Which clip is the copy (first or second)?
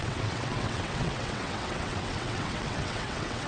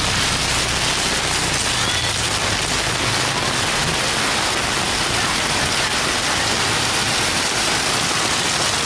first